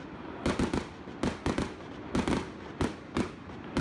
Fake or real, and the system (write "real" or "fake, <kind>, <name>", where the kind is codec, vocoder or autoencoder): real